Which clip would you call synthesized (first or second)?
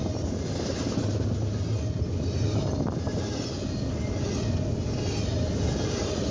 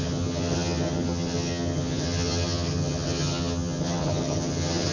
second